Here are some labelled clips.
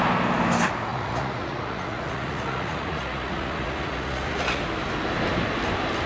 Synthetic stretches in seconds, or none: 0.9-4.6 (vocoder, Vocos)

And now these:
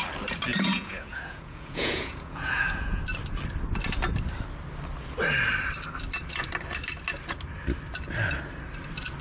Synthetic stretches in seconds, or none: 0.5-3.0 (vocoder, Vocos)

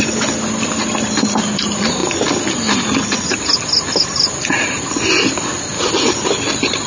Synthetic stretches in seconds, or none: none

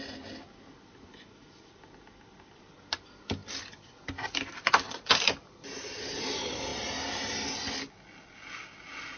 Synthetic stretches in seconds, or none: none